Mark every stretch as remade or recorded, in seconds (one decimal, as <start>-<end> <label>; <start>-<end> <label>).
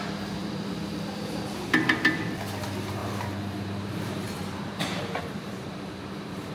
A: 0.0-0.4 recorded; 0.4-1.5 remade; 1.5-3.0 recorded; 3.0-6.5 remade